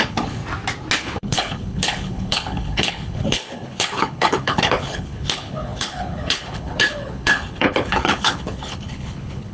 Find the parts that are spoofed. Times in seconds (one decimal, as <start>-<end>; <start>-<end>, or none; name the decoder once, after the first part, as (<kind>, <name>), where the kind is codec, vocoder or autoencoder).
0.0-0.4 (codec, HILCodec); 1.0-9.5